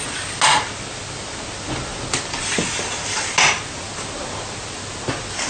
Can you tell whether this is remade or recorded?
recorded